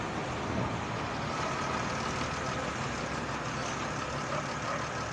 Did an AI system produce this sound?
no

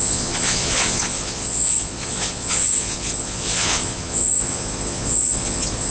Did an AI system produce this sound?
yes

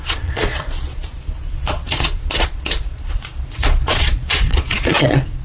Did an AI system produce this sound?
yes